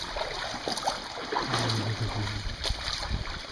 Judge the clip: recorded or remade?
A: recorded